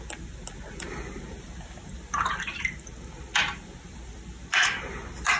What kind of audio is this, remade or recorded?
recorded